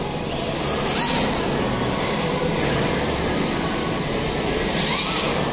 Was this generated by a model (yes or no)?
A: no